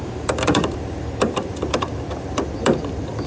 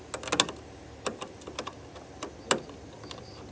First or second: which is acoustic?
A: second